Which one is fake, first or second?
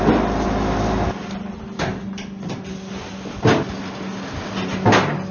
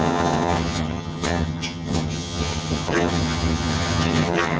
second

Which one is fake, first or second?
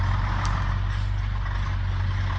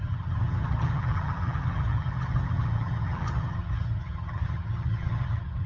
second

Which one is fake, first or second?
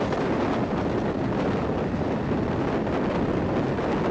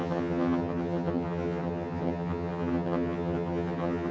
second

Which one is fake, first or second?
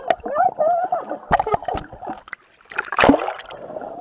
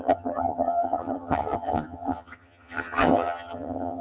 second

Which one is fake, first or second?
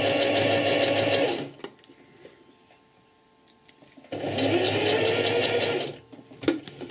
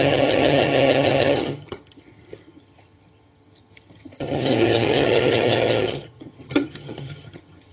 second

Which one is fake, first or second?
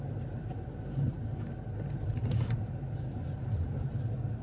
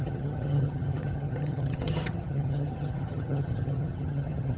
second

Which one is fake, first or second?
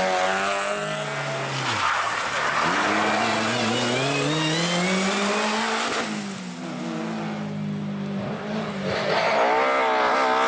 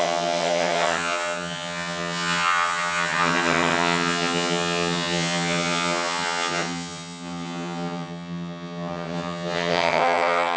second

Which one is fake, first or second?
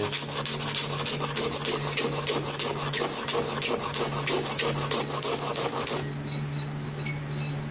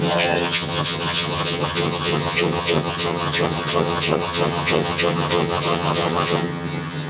second